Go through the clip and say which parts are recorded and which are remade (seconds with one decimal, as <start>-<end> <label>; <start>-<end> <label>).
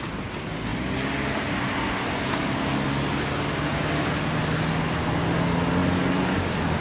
0.0-6.8 recorded